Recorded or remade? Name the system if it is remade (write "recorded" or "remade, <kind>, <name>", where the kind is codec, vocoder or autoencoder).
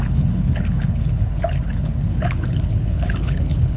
remade, codec, HILCodec